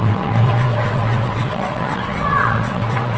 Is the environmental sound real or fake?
fake